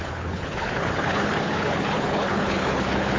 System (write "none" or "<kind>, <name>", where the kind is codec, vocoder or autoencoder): codec, HILCodec